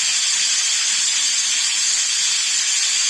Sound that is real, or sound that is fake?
real